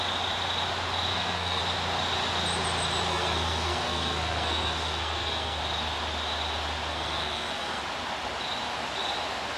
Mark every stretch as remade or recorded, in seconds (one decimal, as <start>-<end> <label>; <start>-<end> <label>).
0.0-1.1 recorded; 1.1-1.6 remade; 1.6-3.1 recorded; 3.1-5.6 remade; 5.6-6.9 recorded; 6.9-7.8 remade; 7.8-9.6 recorded